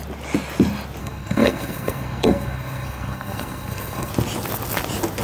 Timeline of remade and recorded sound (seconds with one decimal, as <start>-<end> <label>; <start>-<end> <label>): 0.0-1.0 recorded; 1.0-4.1 remade; 4.1-5.2 recorded